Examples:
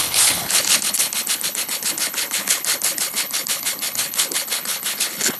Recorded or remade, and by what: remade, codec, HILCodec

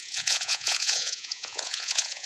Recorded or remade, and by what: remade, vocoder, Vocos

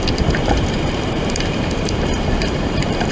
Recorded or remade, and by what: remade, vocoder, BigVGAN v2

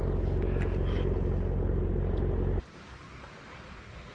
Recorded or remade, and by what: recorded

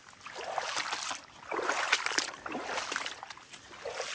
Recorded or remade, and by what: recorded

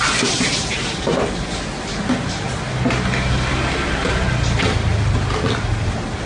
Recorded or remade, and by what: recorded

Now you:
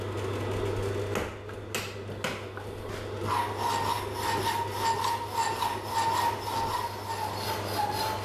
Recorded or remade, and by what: recorded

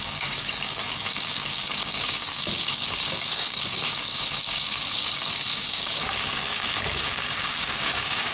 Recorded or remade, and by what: remade, codec, DAC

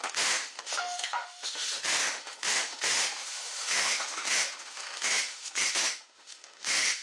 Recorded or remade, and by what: remade, autoencoder, DAC-VAE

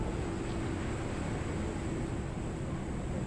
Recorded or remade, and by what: recorded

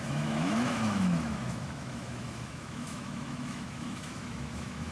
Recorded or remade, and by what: remade, autoencoder, DAC-VAE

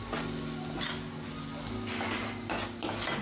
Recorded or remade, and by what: recorded